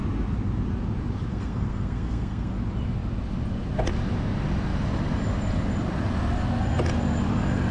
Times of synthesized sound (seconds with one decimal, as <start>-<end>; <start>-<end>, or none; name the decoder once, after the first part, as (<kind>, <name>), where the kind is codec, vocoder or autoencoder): 1.3-2.5 (codec, SNAC)